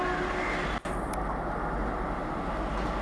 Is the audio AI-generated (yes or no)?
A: no